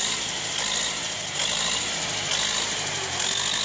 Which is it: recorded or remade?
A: recorded